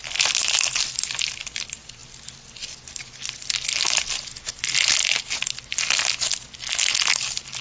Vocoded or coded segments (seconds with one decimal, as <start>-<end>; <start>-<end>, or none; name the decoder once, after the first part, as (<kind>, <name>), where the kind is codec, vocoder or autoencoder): none